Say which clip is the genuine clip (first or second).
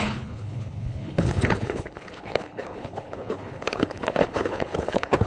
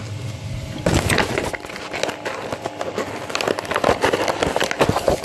second